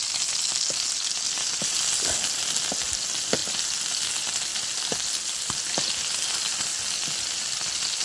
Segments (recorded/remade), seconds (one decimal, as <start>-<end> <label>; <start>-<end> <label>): 0.0-4.5 recorded; 4.5-5.9 remade; 5.9-8.0 recorded